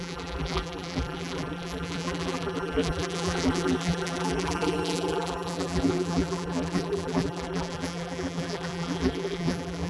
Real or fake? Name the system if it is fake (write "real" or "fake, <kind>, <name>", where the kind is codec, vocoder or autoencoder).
fake, vocoder, BigVGAN v2